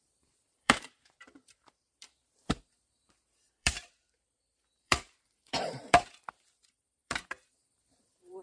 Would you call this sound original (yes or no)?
no